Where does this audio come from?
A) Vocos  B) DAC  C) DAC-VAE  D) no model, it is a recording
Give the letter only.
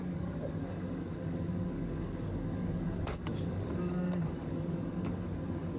B